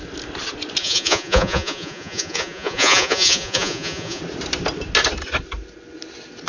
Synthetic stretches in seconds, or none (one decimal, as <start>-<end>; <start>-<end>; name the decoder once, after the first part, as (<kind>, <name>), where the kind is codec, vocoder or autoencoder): 0.8-4.2 (vocoder, Vocos)